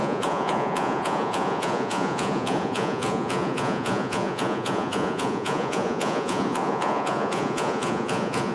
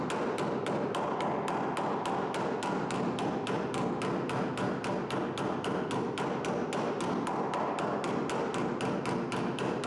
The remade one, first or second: first